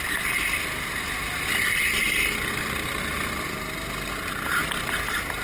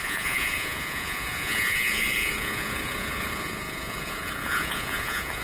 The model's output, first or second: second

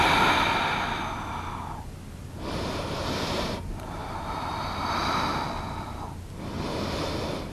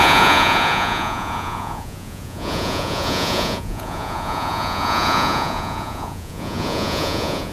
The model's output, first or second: second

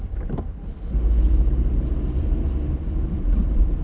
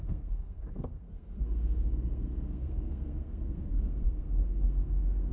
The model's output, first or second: second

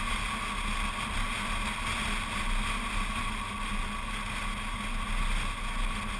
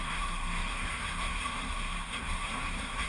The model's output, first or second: second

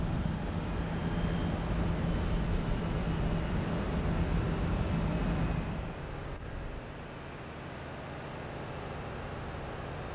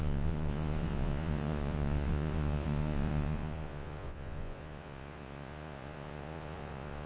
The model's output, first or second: second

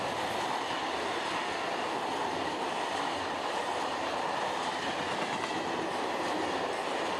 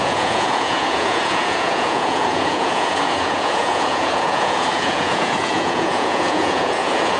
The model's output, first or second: second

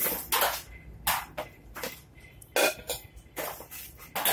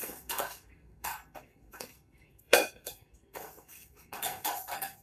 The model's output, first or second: second